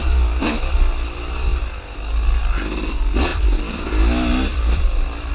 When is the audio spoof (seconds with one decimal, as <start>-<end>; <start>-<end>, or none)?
3.3-3.8; 4.5-5.3